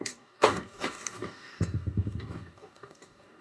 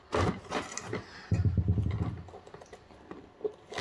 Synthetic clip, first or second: first